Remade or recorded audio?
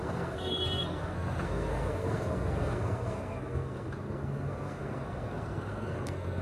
remade